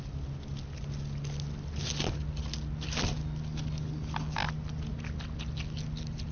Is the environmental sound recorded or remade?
recorded